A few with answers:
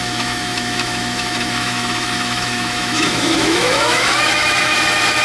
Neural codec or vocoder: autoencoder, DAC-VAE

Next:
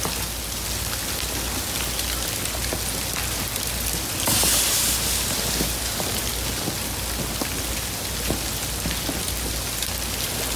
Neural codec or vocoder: none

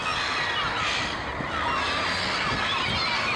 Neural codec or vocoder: none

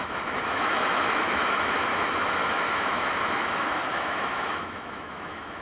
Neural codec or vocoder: autoencoder, DAC-VAE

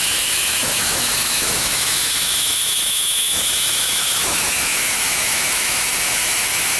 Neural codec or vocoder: autoencoder, DAC-VAE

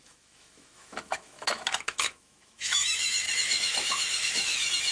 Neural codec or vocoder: autoencoder, DAC-VAE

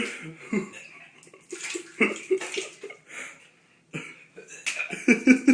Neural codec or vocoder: none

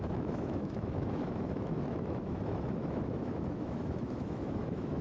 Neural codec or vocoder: autoencoder, DAC-VAE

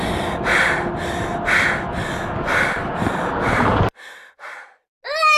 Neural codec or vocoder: none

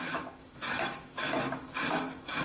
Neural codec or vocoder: autoencoder, DAC-VAE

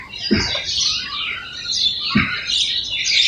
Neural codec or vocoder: none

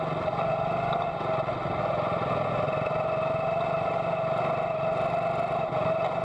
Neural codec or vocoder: none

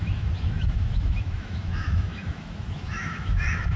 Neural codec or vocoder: autoencoder, DAC-VAE